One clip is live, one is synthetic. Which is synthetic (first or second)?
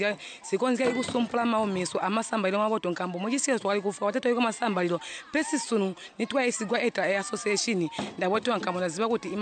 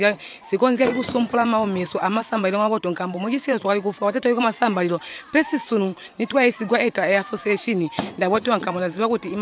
second